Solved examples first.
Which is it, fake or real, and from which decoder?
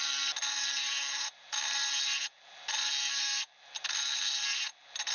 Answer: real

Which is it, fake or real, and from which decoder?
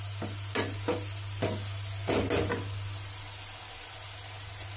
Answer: real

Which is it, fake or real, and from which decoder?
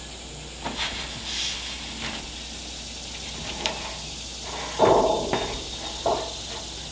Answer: real